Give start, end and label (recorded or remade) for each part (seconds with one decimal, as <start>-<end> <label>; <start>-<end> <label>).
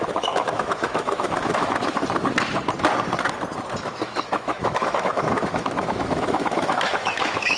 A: 0.0-2.0 remade; 2.0-3.8 recorded; 3.8-7.6 remade